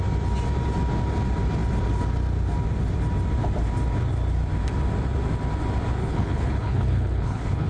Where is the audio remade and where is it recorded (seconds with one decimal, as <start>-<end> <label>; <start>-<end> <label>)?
0.0-6.0 recorded; 6.0-7.7 remade